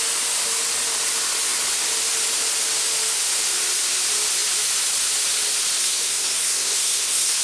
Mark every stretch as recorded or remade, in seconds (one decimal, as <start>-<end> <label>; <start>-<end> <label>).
0.0-5.8 recorded; 5.8-7.4 remade